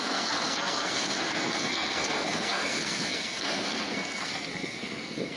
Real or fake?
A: fake